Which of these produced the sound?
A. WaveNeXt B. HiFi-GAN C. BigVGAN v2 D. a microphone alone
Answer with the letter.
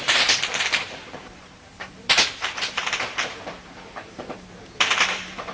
C